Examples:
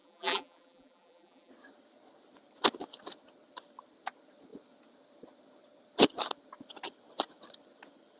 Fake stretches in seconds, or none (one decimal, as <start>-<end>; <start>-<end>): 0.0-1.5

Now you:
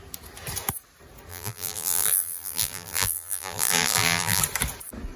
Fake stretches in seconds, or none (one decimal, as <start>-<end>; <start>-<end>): 1.3-4.4

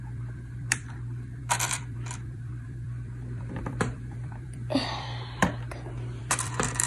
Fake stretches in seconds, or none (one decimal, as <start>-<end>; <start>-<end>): 0.0-5.4; 6.2-6.9

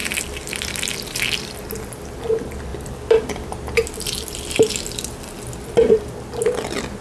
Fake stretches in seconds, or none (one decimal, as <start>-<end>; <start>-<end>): 0.0-1.5; 2.7-4.7

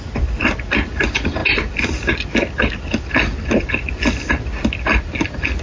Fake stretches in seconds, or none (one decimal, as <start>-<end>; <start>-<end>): none

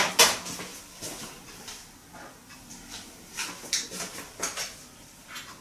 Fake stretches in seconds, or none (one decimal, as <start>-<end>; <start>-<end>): 0.7-1.3; 2.0-3.1